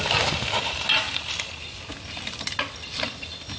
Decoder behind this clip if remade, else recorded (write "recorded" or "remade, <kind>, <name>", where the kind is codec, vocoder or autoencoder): recorded